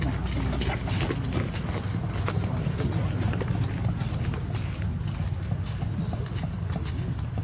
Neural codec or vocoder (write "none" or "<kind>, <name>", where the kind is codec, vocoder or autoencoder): none